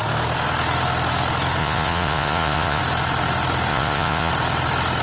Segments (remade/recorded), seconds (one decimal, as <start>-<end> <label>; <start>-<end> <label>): 0.0-1.6 recorded; 1.6-2.8 remade; 2.8-3.7 recorded; 3.7-4.3 remade; 4.3-5.0 recorded